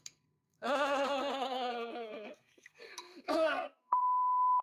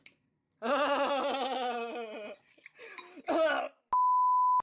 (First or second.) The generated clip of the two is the first